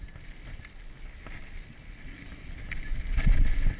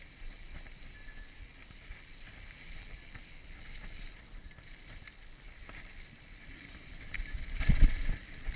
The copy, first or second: second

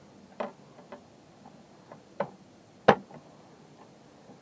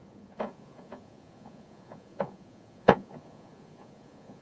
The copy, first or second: second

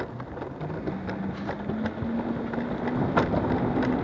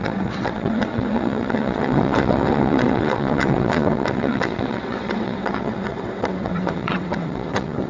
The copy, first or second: second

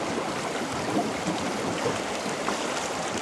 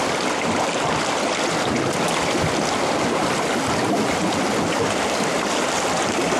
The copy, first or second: first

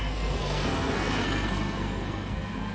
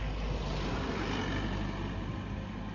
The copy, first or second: first